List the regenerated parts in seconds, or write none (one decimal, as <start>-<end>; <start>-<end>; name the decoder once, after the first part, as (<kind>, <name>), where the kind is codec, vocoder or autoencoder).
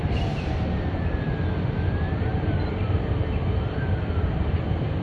2.3-4.6 (vocoder, BigVGAN v2)